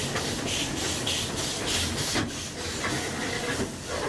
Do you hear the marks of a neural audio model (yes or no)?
no